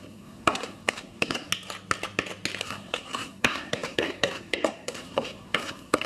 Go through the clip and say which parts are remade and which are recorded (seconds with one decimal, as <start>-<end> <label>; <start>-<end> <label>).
0.0-1.5 remade; 1.5-2.6 recorded; 2.6-6.1 remade